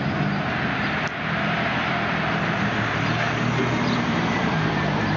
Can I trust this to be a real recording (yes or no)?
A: no